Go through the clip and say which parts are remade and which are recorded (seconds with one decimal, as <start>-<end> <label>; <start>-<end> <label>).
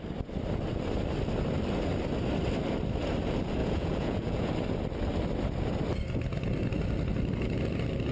0.0-3.6 recorded; 3.6-4.5 remade; 4.5-8.1 recorded